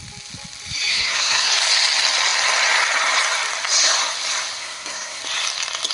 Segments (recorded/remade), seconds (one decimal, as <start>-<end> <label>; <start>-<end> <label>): 0.0-0.9 recorded; 0.9-1.5 remade; 1.5-4.6 recorded; 4.6-5.2 remade; 5.2-5.9 recorded